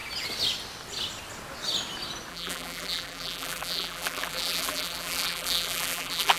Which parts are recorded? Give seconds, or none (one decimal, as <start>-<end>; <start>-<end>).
0.0-2.3